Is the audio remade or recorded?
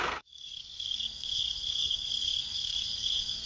remade